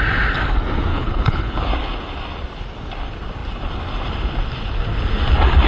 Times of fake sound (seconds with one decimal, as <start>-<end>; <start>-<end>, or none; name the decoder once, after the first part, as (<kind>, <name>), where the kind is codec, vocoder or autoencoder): 0.9-1.7 (codec, HILCodec)